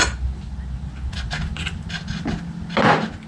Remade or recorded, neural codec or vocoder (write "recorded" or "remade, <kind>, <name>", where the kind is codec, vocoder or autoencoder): recorded